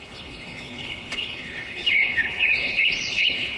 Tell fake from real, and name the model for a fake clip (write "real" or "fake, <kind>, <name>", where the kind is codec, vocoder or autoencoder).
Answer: fake, codec, HILCodec